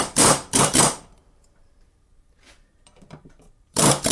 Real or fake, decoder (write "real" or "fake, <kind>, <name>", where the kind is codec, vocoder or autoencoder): fake, vocoder, BigVGAN v2